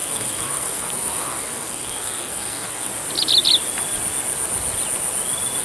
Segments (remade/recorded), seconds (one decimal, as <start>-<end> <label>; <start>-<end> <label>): 0.0-2.9 remade; 2.9-5.6 recorded